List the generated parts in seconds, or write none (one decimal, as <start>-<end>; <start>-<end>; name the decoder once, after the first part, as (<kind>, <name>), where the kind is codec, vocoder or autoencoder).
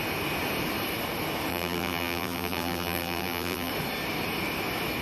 1.5-3.7 (vocoder, BigVGAN v2)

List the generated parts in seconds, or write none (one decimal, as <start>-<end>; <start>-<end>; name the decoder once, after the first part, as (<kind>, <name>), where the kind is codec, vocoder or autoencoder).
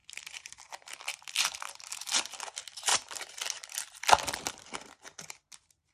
0.0-0.6 (vocoder, BigVGAN v2); 1.1-1.7; 2.9-4.7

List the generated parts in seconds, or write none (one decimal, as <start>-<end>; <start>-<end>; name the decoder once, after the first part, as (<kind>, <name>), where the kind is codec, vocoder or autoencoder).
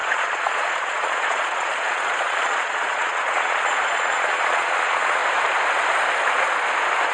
0.0-5.2 (vocoder, Vocos)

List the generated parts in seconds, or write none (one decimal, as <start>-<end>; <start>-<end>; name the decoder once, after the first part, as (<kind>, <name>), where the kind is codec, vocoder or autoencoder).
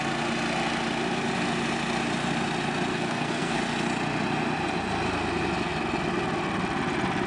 2.9-3.6 (codec, SNAC)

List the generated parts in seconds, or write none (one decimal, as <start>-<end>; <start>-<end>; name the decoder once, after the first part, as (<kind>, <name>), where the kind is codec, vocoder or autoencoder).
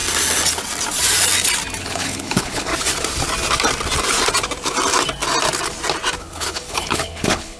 1.8-2.7 (codec, HILCodec); 6.2-7.6